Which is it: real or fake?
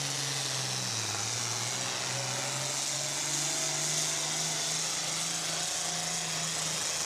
real